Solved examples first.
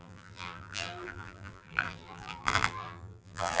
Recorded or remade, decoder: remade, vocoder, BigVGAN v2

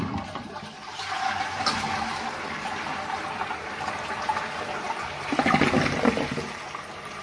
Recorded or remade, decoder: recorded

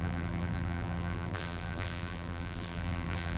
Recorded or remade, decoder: remade, vocoder, BigVGAN v2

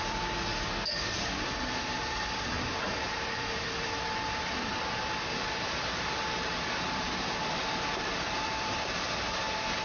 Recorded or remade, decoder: remade, vocoder, BigVGAN v2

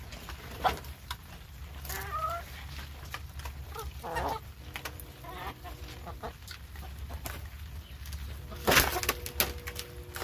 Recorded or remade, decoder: recorded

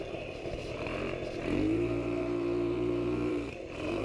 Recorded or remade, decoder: remade, vocoder, BigVGAN v2